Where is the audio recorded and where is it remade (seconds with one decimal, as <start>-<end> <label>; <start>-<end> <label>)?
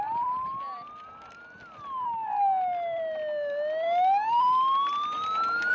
0.0-5.7 recorded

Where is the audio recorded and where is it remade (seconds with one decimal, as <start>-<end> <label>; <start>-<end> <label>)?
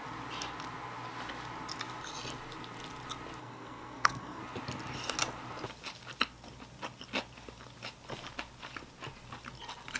0.0-3.4 recorded; 3.4-4.4 remade; 4.4-10.0 recorded